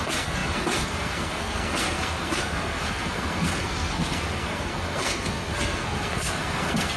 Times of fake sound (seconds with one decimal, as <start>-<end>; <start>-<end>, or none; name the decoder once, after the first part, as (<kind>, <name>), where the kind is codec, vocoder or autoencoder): 0.0-7.0 (codec, SNAC)